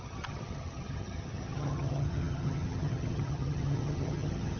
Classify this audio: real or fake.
fake